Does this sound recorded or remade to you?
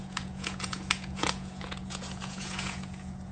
remade